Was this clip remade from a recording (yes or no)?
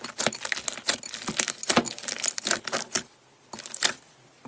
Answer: no